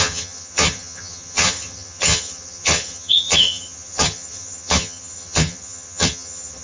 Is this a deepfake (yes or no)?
yes